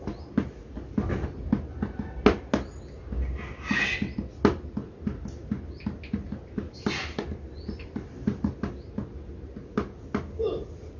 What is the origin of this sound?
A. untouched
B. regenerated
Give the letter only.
A